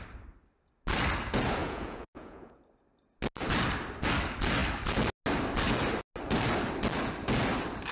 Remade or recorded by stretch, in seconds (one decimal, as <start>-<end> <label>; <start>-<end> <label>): 0.0-1.6 recorded; 1.6-2.6 remade; 2.6-7.9 recorded